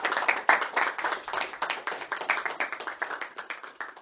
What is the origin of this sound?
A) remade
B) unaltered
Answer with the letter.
B